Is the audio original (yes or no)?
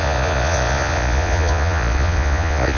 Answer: no